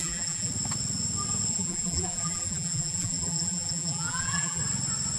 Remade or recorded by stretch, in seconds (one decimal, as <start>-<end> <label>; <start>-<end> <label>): 0.0-0.5 remade; 0.5-1.5 recorded; 1.5-4.6 remade; 4.6-5.2 recorded